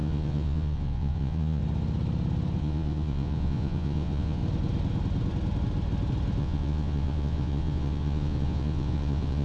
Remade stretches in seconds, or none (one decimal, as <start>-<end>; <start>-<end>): 0.0-1.6; 2.6-4.4; 6.4-9.4